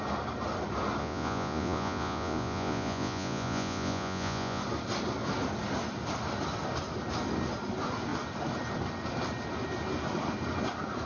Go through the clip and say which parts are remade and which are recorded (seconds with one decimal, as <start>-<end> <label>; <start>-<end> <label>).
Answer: 0.0-1.0 recorded; 1.0-4.6 remade; 4.6-11.1 recorded